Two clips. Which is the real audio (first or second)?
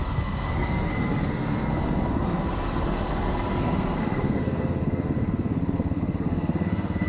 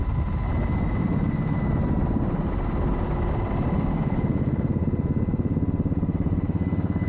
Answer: second